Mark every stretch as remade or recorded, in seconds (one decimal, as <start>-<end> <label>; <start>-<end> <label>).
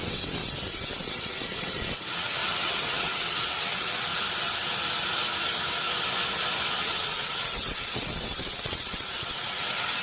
0.0-0.4 remade; 0.4-1.1 recorded; 1.1-4.1 remade; 4.1-6.8 recorded; 6.8-10.0 remade